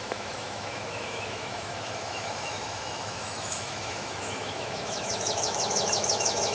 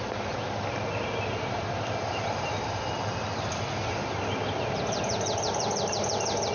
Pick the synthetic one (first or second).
first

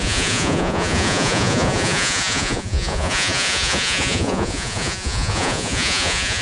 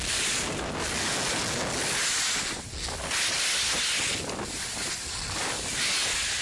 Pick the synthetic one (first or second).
first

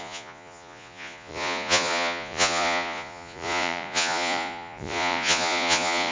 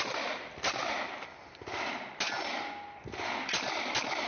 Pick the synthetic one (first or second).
first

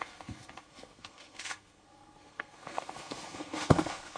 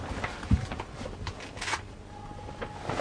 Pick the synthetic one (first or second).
first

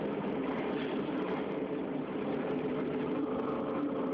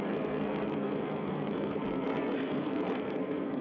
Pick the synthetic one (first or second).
second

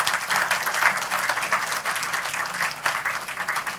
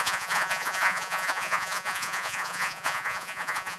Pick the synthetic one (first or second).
second